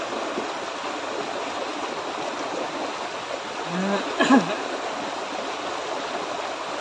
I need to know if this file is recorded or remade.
recorded